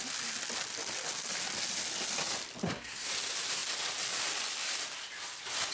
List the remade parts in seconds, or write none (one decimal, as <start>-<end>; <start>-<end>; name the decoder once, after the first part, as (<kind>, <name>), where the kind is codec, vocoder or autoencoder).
2.6-3.1 (codec, SNAC)